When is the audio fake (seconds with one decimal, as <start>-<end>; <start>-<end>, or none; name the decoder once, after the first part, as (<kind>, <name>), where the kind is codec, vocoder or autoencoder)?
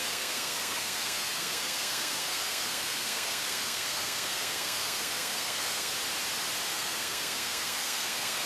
0.0-5.9 (codec, SNAC); 6.7-8.5